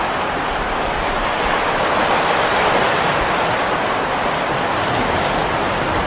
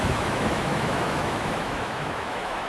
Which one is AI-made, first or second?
second